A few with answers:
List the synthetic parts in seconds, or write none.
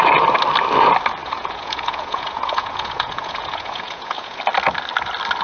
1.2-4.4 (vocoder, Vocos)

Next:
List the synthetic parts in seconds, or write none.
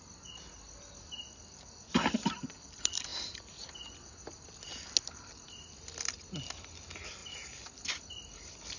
none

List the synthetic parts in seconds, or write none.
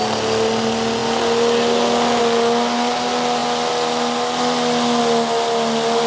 none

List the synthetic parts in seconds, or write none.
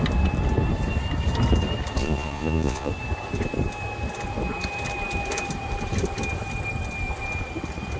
2.0-2.9 (vocoder, Vocos)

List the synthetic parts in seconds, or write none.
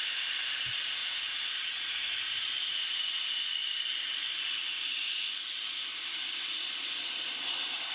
1.0-3.0 (vocoder, Vocos)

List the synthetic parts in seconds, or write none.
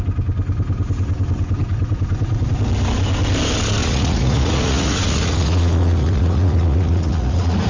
3.8-7.7 (vocoder, Vocos)